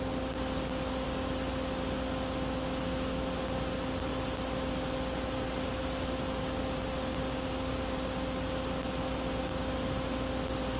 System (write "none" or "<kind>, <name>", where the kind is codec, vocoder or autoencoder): none